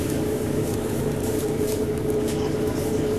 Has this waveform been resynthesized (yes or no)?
yes